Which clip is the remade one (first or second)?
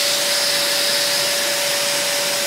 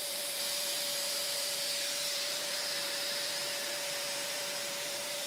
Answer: second